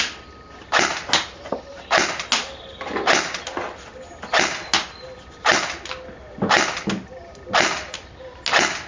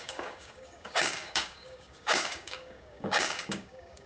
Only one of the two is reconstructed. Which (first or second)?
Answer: second